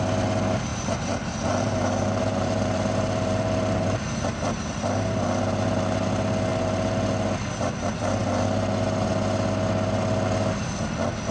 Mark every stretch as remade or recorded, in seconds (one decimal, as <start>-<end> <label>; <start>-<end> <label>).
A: 0.0-0.7 recorded; 0.7-4.9 remade; 4.9-6.5 recorded; 6.5-7.1 remade; 7.1-11.3 recorded